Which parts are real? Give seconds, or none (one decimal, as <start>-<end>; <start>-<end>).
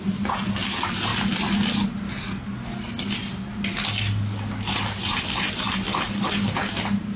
0.0-7.2